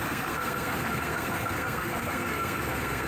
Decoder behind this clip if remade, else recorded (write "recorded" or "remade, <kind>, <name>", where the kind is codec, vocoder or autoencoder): remade, codec, SNAC